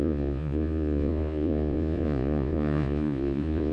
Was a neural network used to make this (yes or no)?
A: yes